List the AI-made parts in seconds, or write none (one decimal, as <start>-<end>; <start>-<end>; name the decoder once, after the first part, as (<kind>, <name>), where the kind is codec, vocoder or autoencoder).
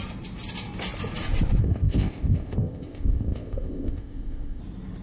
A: 1.6-4.6 (codec, ZipCodec)